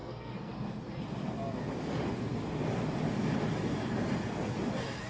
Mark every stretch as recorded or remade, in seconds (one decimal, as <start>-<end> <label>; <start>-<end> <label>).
0.0-0.5 remade; 0.5-5.1 recorded